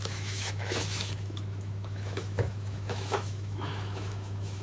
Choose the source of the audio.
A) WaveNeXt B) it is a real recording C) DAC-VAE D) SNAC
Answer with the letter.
C